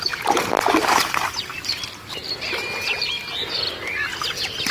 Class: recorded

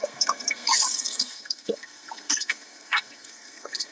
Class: remade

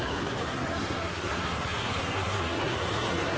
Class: remade